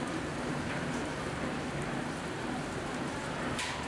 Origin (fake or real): fake